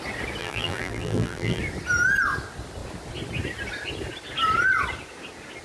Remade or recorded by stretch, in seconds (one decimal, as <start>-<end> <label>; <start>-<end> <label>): 0.0-0.4 recorded; 0.4-1.6 remade; 1.6-5.6 recorded